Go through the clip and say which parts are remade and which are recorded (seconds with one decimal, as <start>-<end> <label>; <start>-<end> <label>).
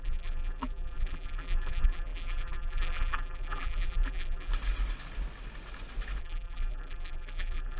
0.0-4.5 remade; 4.5-6.2 recorded; 6.2-7.8 remade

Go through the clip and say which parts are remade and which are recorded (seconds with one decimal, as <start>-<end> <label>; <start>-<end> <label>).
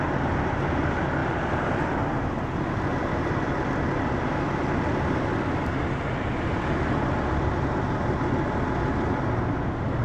0.0-1.2 recorded; 1.2-2.0 remade; 2.0-2.9 recorded; 2.9-7.5 remade; 7.5-10.0 recorded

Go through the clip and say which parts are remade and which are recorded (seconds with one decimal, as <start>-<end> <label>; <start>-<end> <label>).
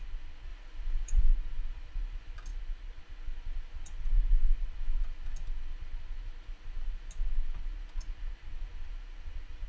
0.0-0.5 recorded; 0.5-1.3 remade; 1.3-2.5 recorded; 2.5-3.0 remade; 3.0-9.7 recorded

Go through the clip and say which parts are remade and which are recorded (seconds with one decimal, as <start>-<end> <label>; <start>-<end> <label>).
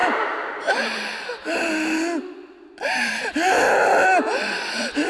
0.0-0.7 remade; 0.7-5.1 recorded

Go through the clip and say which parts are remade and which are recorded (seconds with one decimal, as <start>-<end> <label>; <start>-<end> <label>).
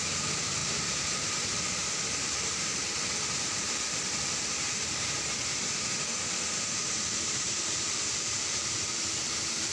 0.0-5.4 remade; 5.4-6.8 recorded; 6.8-9.7 remade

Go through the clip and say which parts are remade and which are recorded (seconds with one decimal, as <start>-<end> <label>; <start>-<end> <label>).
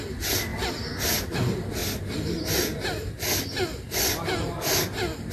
0.0-0.5 recorded; 0.5-1.2 remade; 1.2-5.3 recorded